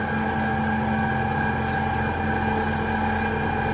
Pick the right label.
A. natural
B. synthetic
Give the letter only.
A